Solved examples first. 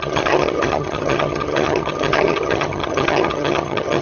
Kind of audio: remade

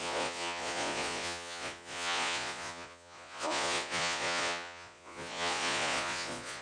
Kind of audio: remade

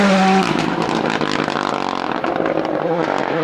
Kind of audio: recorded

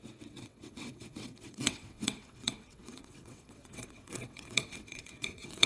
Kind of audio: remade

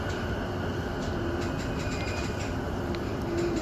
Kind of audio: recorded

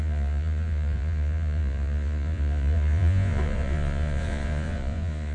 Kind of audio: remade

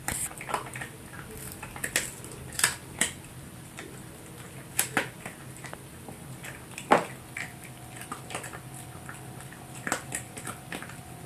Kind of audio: recorded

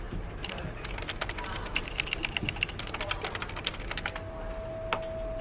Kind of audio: recorded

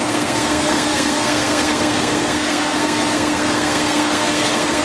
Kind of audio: remade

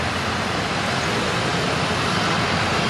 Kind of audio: recorded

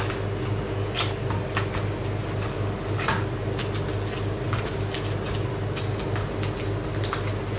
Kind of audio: recorded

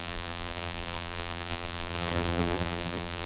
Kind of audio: remade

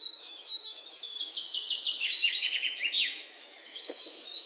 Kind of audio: remade